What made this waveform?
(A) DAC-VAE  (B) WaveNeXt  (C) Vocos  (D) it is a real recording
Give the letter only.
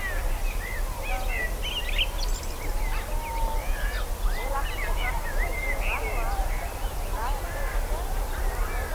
D